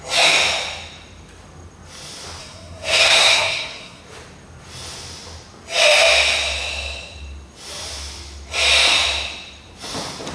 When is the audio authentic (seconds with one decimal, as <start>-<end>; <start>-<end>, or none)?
0.0-2.4; 4.0-10.3